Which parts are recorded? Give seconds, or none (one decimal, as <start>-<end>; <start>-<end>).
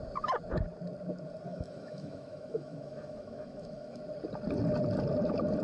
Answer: 0.0-1.5; 4.0-5.6